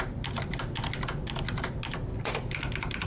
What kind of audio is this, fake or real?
real